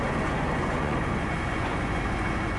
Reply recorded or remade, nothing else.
remade